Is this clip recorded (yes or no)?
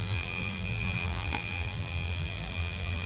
no